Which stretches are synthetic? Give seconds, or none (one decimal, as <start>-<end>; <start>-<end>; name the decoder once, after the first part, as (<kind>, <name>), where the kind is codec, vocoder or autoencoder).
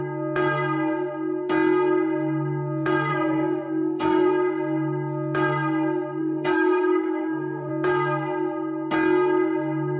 3.1-4.3 (codec, SNAC); 6.2-7.7